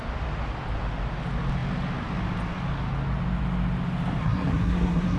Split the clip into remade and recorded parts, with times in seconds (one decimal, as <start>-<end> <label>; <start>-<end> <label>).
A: 0.0-4.2 recorded; 4.2-5.2 remade